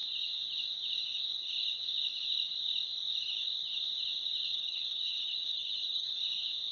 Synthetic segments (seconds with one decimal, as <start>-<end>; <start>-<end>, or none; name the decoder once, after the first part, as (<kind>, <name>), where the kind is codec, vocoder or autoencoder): 4.5-6.2 (vocoder, HiFi-GAN)